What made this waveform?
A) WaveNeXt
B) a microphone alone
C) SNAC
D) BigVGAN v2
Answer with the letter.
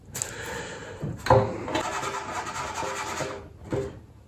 B